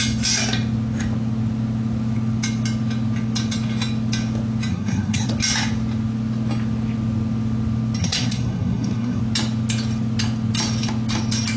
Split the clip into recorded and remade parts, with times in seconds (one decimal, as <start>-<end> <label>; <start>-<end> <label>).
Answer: 0.0-4.7 recorded; 4.7-5.3 remade; 5.3-8.0 recorded; 8.0-9.2 remade; 9.2-11.6 recorded